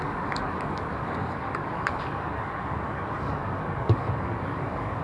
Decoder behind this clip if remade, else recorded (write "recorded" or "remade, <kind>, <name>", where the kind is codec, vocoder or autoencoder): remade, codec, DAC